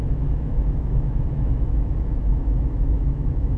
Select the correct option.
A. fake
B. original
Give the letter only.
A